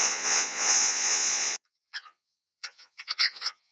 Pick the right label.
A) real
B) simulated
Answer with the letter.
B